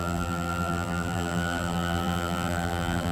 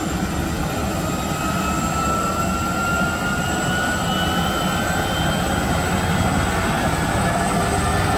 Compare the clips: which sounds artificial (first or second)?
first